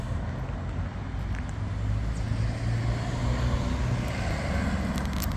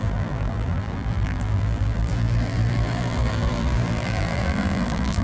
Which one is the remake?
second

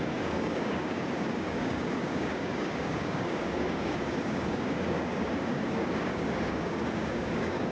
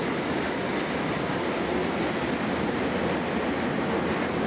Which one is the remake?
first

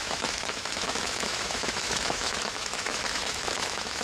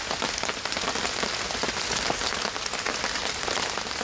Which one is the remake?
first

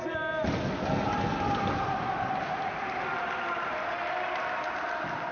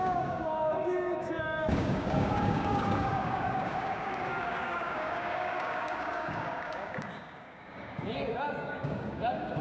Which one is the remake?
second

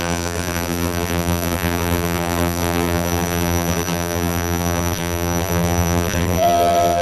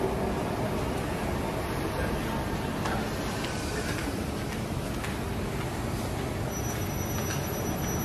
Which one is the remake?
first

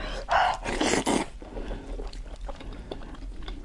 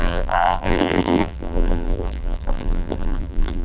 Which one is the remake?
second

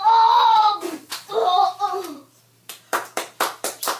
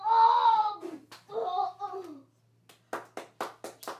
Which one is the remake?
first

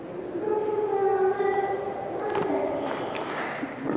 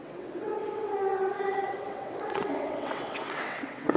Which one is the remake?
second